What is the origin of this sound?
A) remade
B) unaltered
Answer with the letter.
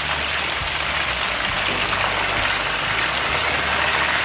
B